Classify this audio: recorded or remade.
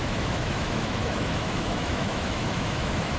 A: remade